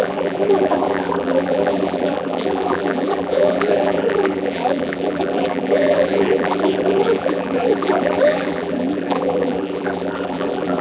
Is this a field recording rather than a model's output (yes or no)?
no